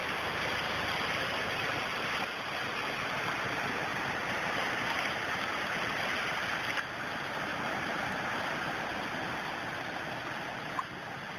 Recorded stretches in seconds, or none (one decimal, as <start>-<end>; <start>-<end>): 0.0-3.9; 6.6-7.5; 8.6-11.4